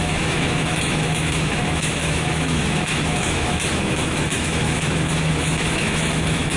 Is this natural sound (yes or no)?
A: no